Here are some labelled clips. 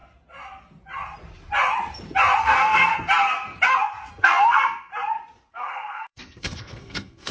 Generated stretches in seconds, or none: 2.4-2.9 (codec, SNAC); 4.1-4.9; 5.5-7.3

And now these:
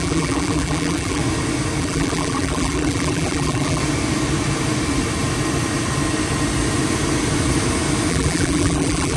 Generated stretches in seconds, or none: 0.0-1.2 (vocoder, BigVGAN v2); 1.8-3.8; 8.1-9.2